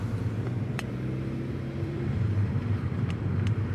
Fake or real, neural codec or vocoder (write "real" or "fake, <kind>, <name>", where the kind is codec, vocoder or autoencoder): fake, vocoder, BigVGAN v2